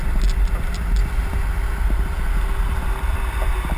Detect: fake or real real